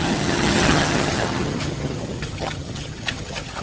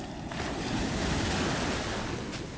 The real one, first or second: second